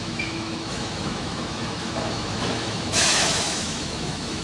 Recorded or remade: remade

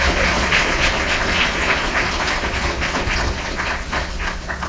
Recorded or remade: remade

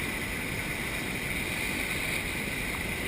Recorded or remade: recorded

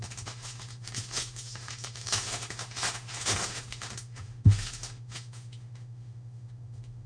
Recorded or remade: remade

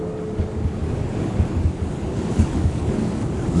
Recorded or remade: remade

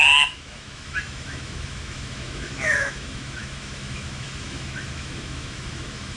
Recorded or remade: remade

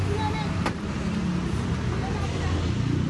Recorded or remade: recorded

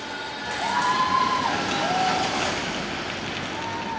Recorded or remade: recorded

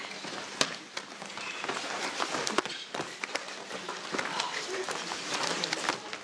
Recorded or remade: remade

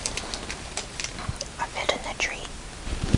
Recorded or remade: recorded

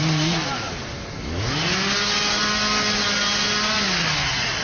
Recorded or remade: recorded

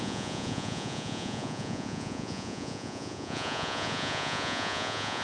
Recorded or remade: remade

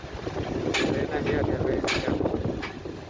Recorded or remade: remade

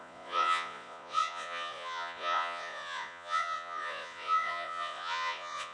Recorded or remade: remade